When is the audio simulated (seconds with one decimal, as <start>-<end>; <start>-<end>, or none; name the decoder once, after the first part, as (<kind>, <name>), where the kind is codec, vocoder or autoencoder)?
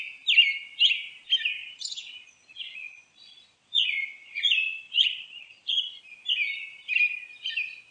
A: 1.6-6.0 (vocoder, Vocos)